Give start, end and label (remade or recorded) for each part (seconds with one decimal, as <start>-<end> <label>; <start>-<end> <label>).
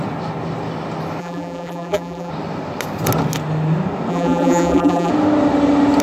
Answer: 0.0-1.2 recorded; 1.2-2.3 remade; 2.3-4.1 recorded; 4.1-5.1 remade; 5.1-6.0 recorded